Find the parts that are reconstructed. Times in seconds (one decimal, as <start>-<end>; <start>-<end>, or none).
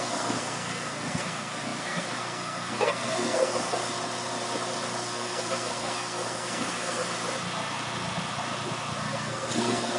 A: 0.0-3.8; 5.0-7.0; 9.1-10.0